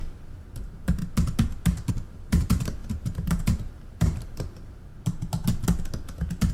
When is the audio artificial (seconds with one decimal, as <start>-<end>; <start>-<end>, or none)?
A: 0.0-1.0; 1.9-4.9